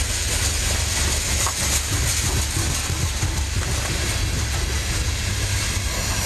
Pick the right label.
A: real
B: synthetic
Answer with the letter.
A